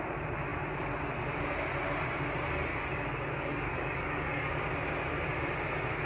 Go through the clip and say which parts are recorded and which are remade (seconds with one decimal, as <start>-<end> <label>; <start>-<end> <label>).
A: 0.0-2.7 recorded; 2.7-4.5 remade; 4.5-6.1 recorded